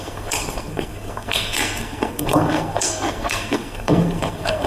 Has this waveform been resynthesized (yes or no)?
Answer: yes